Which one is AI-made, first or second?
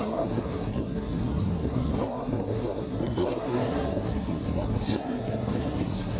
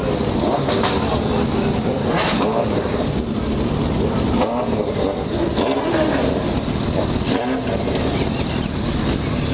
first